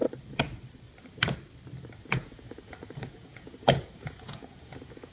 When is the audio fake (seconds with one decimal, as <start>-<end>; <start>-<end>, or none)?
2.1-5.1